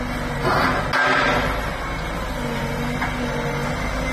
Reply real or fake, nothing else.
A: real